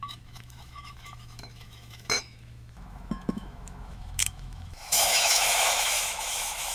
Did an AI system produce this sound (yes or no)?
yes